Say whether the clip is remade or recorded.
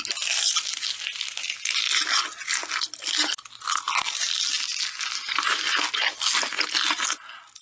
recorded